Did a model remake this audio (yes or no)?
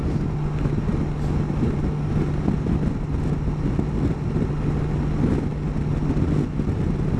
no